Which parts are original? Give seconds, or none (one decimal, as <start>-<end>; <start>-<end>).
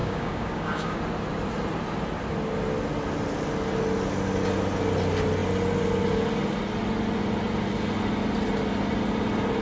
1.0-9.6